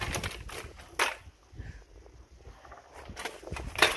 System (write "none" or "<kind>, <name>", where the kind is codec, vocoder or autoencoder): none